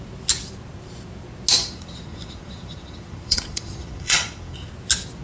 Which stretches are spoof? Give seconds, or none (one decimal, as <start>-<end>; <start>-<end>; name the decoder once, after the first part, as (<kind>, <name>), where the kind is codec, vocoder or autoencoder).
1.6-4.7 (vocoder, Vocos)